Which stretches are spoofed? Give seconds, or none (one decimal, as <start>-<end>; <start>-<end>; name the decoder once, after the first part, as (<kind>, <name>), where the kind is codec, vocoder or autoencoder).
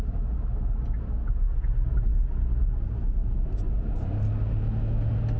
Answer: none